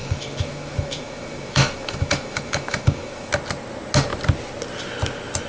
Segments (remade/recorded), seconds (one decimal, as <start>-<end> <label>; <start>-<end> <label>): 0.0-3.3 remade; 3.3-5.5 recorded